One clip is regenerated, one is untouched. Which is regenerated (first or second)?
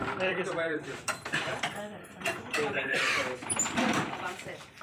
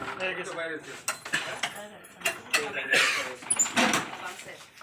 first